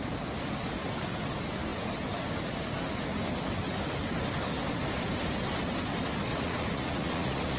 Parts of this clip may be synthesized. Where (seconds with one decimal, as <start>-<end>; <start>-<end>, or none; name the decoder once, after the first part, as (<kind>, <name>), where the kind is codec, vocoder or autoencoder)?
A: 6.3-7.6 (vocoder, Vocos)